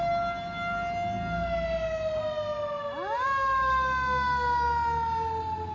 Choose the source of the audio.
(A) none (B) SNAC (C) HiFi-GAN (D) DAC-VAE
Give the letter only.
A